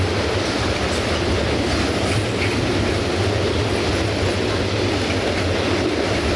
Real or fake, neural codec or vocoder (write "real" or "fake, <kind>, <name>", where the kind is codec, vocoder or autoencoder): real